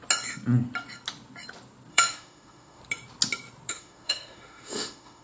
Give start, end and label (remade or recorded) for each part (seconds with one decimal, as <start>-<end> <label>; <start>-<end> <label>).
0.0-1.9 recorded; 1.9-2.8 remade; 2.8-3.7 recorded; 3.7-5.2 remade